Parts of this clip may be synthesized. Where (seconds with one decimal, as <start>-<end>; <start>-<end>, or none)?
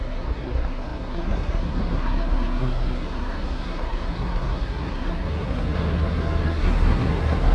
0.0-7.5